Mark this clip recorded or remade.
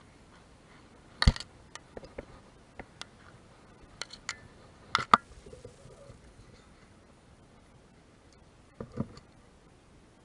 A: recorded